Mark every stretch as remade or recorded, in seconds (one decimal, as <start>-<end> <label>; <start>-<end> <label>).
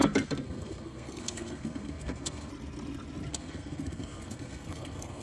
0.0-2.5 remade; 2.5-3.3 recorded; 3.3-5.2 remade